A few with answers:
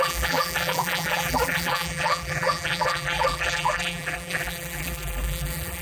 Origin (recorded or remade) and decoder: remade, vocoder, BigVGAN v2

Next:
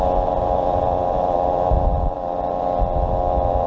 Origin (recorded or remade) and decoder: remade, vocoder, BigVGAN v2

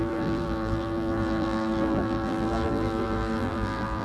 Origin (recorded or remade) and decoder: remade, vocoder, BigVGAN v2